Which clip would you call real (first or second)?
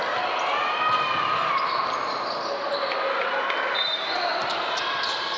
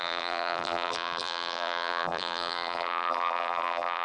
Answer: first